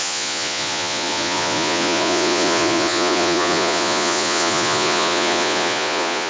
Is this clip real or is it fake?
fake